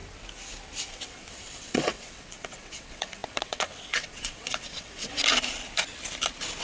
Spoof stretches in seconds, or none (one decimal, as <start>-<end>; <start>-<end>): 0.9-5.2